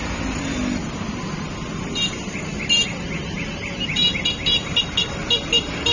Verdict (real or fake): real